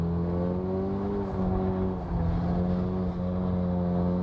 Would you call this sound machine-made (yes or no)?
no